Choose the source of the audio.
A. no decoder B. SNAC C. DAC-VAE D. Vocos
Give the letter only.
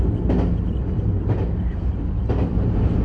A